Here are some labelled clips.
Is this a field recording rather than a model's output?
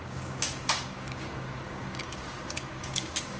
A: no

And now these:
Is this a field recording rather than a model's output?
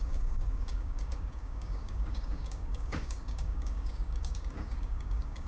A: no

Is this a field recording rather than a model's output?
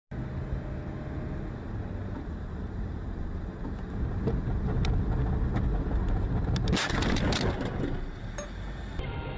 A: yes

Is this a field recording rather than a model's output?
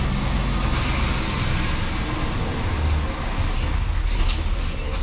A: yes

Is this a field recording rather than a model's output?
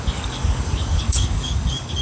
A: no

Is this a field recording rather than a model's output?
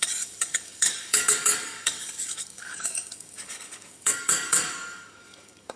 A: no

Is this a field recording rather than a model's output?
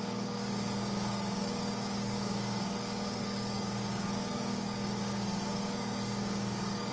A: no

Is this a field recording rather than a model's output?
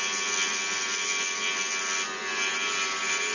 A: yes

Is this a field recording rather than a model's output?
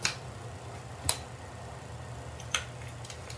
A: yes